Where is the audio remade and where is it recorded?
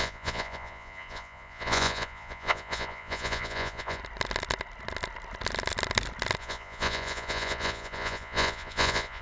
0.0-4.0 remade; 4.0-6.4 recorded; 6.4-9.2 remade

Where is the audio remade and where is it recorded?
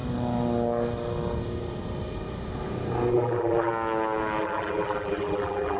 0.0-3.1 recorded; 3.1-3.7 remade; 3.7-4.4 recorded; 4.4-5.8 remade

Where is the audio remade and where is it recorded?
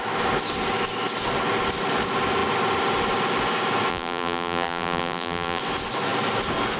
0.0-3.9 recorded; 3.9-5.6 remade; 5.6-6.8 recorded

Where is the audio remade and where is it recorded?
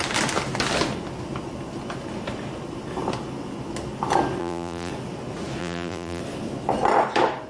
0.0-4.4 recorded; 4.4-4.9 remade; 4.9-5.6 recorded; 5.6-6.2 remade; 6.2-7.5 recorded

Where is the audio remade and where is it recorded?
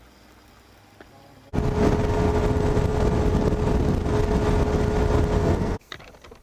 0.0-5.4 recorded; 5.4-5.9 remade; 5.9-6.4 recorded